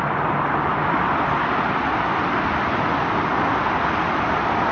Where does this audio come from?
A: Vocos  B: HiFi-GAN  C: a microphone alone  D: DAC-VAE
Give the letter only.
C